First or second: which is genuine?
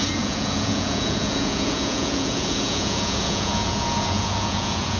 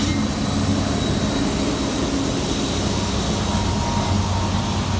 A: second